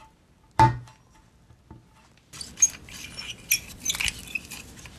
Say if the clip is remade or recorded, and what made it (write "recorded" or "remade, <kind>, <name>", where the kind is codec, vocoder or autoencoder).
recorded